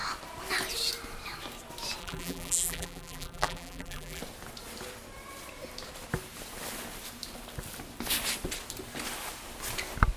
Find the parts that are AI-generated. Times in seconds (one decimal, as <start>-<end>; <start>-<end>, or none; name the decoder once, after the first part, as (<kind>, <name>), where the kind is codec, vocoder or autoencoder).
2.0-4.2 (vocoder, BigVGAN v2)